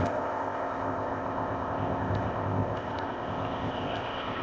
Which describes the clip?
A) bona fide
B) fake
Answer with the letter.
B